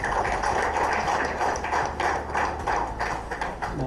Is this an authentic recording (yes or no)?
yes